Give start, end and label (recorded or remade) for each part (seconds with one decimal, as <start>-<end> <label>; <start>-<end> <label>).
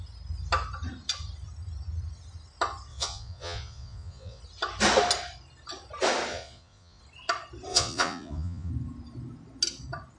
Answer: 0.0-2.9 recorded; 2.9-4.4 remade; 4.4-6.3 recorded; 6.3-7.0 remade; 7.0-7.7 recorded; 7.7-8.7 remade; 8.7-10.2 recorded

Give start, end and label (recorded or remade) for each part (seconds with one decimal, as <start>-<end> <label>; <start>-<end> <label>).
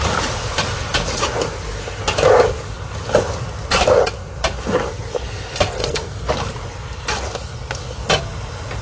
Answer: 0.0-5.8 recorded; 5.8-6.3 remade; 6.3-8.8 recorded